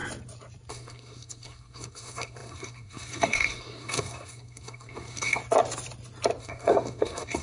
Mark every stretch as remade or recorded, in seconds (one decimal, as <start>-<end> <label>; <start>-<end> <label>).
0.0-0.7 recorded; 0.7-5.4 remade; 5.4-6.4 recorded; 6.4-7.4 remade